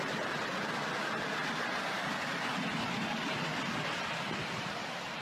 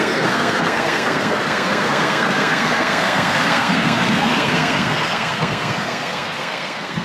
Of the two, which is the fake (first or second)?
second